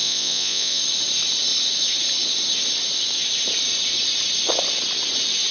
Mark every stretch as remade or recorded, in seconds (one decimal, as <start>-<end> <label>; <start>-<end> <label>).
0.0-0.8 remade; 0.8-5.5 recorded